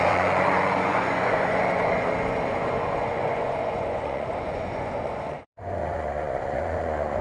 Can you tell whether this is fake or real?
fake